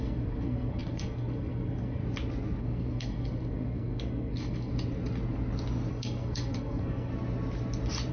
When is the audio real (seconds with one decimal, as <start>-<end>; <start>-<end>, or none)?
2.0-2.6; 4.7-5.9; 7.1-8.1